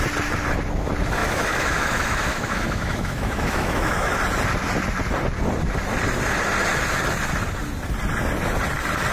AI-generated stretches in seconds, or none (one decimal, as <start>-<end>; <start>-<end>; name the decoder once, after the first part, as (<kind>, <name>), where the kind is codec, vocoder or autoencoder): 1.2-4.2 (autoencoder, DAC-VAE)